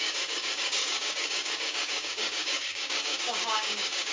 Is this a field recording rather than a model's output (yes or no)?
no